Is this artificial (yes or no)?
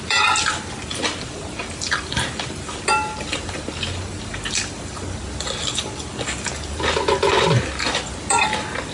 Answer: yes